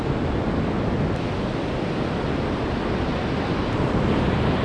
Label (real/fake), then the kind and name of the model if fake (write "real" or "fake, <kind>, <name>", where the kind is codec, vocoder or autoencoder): real